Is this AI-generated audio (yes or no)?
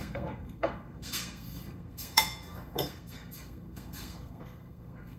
yes